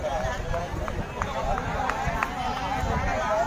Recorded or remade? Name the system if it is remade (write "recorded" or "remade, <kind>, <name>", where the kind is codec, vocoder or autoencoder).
recorded